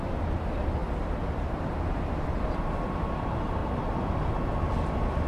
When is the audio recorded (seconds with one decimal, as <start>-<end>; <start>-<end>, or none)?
0.0-5.3